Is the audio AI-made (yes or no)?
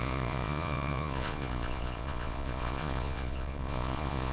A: yes